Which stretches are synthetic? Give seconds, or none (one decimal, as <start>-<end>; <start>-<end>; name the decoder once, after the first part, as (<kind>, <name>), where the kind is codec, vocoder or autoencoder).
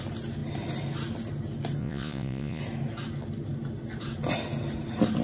1.8-2.6 (vocoder, Vocos)